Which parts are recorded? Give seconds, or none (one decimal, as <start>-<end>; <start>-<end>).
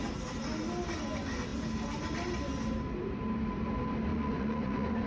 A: 0.0-4.1